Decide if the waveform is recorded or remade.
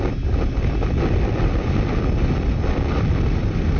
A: recorded